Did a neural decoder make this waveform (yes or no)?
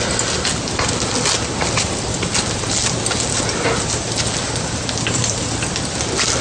no